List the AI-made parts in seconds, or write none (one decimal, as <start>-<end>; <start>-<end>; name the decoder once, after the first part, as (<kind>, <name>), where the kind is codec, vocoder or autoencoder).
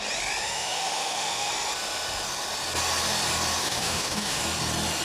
0.4-1.5 (autoencoder, DAC-VAE); 3.6-4.4